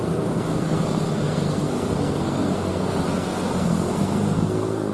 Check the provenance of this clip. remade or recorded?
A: remade